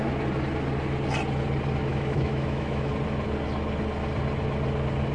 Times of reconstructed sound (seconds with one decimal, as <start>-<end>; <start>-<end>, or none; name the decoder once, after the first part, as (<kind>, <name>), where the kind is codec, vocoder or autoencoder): 1.9-2.9 (autoencoder, DAC-VAE)